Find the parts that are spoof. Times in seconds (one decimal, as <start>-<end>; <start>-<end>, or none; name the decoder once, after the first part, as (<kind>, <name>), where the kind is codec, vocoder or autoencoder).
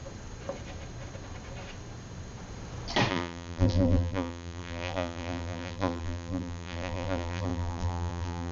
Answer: 3.1-8.5 (vocoder, BigVGAN v2)